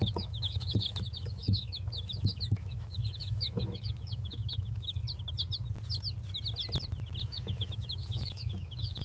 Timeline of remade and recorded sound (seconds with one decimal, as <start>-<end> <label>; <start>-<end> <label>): 0.0-5.0 remade; 5.0-7.2 recorded; 7.2-9.0 remade